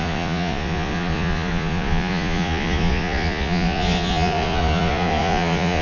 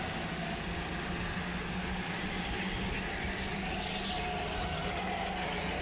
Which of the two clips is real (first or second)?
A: second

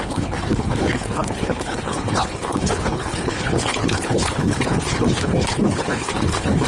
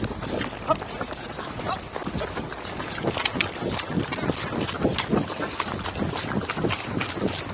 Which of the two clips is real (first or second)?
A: second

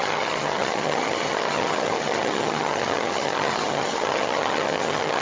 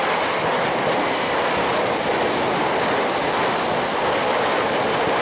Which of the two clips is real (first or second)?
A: second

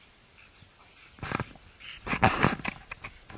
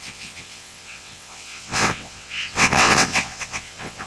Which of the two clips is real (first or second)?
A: first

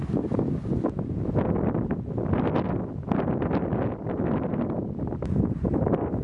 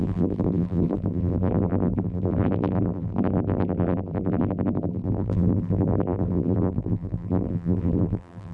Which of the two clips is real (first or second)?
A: first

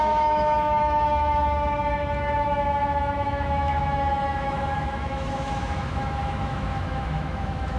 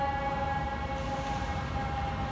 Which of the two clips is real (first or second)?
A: second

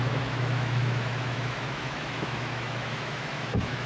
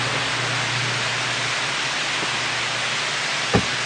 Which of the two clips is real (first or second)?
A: second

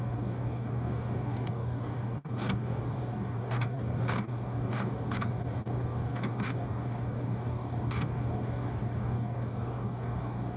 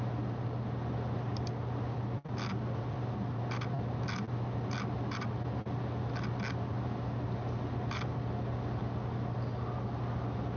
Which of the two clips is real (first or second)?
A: second